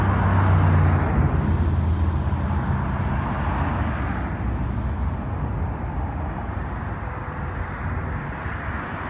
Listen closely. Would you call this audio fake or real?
real